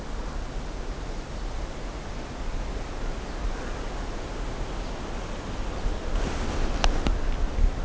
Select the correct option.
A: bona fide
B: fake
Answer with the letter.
A